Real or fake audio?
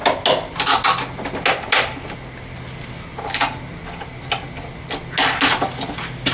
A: real